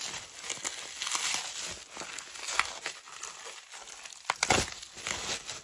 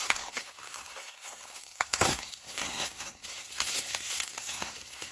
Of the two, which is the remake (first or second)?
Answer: second